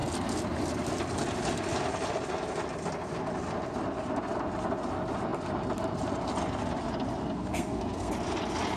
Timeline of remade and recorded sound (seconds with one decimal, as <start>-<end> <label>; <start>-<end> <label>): 0.0-7.2 recorded; 7.2-8.1 remade; 8.1-8.8 recorded